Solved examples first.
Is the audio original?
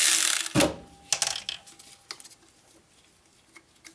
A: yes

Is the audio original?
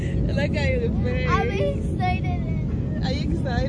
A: yes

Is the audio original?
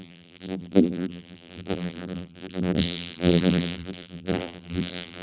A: no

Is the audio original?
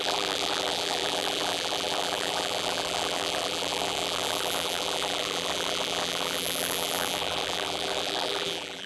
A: no